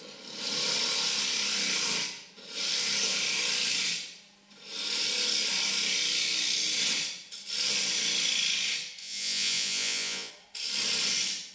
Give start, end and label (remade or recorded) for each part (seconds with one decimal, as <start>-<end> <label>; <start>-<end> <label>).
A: 0.0-9.0 recorded; 9.0-10.3 remade; 10.3-11.5 recorded